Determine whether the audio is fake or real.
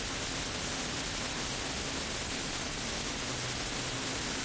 real